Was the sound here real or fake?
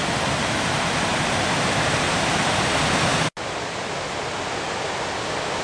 real